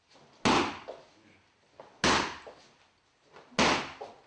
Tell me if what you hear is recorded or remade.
recorded